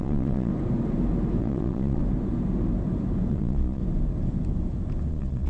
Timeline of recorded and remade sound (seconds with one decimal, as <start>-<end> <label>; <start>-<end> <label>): 0.0-0.5 remade; 0.5-1.4 recorded; 1.4-2.0 remade; 2.0-3.3 recorded; 3.3-3.8 remade; 3.8-5.1 recorded; 5.1-5.5 remade